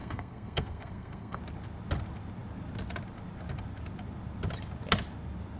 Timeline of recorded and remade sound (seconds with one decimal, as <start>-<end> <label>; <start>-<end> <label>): 0.0-1.4 remade; 1.4-5.6 recorded

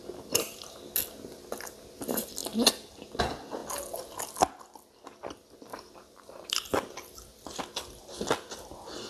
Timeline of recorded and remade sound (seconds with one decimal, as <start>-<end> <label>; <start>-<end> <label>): 0.0-5.7 recorded; 5.7-7.6 remade; 7.6-9.1 recorded

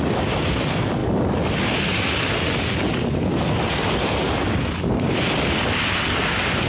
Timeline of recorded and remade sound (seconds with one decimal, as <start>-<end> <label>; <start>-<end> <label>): 0.0-6.7 recorded

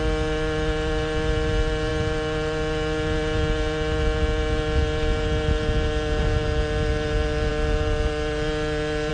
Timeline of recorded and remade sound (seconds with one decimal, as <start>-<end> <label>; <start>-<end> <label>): 0.0-9.1 recorded

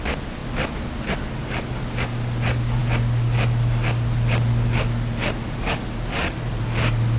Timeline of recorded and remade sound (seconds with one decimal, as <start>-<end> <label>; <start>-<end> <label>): 0.0-7.2 recorded